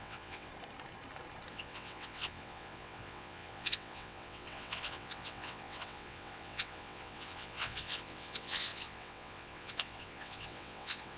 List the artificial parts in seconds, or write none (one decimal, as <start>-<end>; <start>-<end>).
0.0-0.5; 1.5-11.2